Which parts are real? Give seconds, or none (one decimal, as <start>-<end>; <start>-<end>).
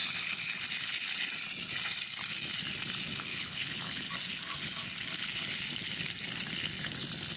0.0-3.3; 4.1-7.4